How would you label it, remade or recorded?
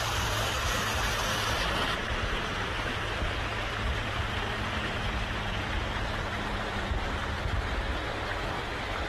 remade